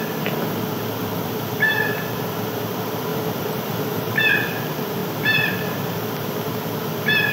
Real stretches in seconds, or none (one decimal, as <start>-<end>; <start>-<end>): 0.0-1.0; 2.2-3.1; 4.2-5.0; 5.5-7.3